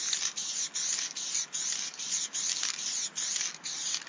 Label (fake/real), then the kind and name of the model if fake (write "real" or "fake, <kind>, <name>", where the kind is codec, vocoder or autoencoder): real